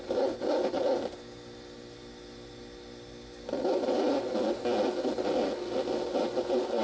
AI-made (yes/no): no